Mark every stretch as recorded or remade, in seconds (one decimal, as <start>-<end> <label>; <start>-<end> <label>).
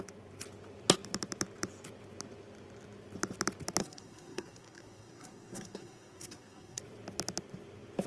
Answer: 0.0-3.8 recorded; 3.8-6.8 remade; 6.8-8.1 recorded